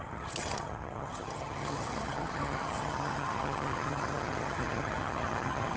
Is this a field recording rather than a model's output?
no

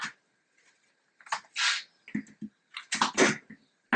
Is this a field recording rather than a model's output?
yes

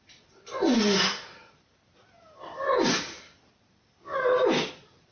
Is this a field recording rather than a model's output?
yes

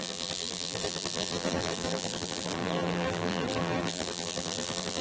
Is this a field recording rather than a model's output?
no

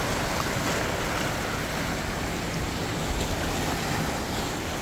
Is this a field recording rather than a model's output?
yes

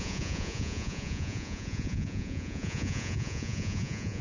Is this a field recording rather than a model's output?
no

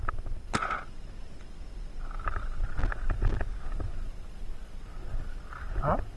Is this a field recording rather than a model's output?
yes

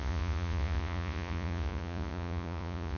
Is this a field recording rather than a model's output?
no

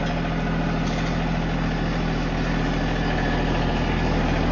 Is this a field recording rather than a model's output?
yes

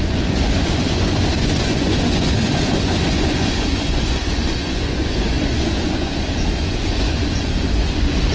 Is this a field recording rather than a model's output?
no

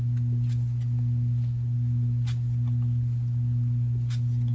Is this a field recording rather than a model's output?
yes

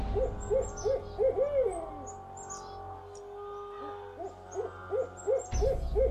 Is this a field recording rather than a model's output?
yes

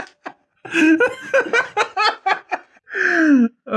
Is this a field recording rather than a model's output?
yes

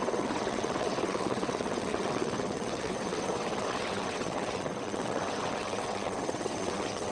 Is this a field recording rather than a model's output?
no